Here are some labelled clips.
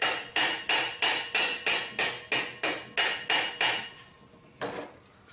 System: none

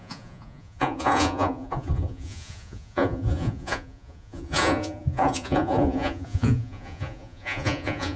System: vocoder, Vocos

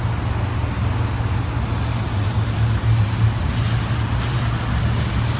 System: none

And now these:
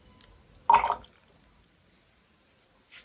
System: none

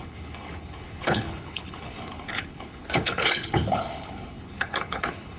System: codec, HILCodec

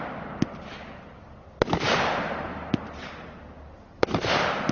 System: none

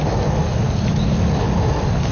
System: none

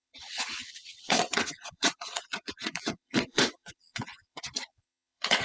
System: vocoder, WaveNeXt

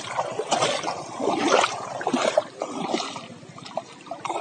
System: none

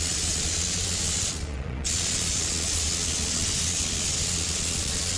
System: vocoder, Vocos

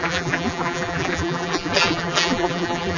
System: vocoder, BigVGAN v2